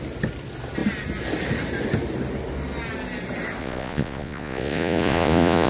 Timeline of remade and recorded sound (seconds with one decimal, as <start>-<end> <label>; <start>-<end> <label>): 0.0-3.6 recorded; 3.6-5.7 remade